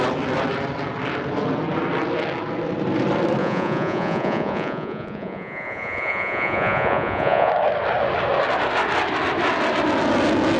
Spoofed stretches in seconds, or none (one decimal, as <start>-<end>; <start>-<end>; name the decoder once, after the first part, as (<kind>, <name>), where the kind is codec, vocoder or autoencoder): 3.4-7.5 (vocoder, Vocos)